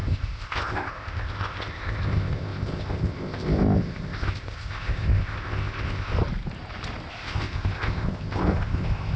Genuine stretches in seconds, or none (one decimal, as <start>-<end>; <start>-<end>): 6.2-7.1